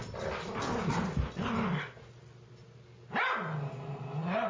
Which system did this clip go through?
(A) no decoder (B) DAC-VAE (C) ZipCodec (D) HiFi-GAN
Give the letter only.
A